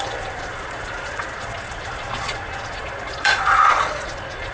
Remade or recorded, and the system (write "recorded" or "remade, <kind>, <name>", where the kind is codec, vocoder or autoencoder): remade, vocoder, Vocos